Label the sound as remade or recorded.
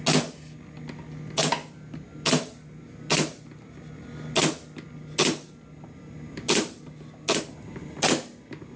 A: recorded